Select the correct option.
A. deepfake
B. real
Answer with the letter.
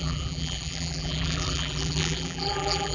A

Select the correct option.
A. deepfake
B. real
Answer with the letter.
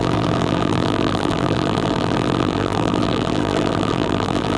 A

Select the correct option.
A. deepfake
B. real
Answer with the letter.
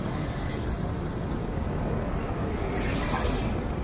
B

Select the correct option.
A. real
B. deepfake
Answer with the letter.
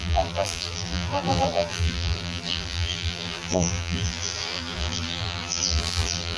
B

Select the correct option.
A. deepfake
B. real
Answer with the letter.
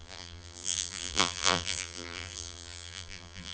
A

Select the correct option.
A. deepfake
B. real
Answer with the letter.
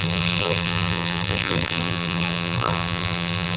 A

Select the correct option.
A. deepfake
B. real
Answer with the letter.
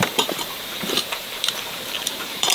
A